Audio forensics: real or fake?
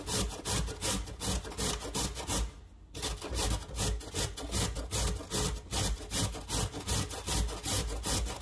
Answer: real